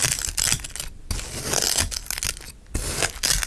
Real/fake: real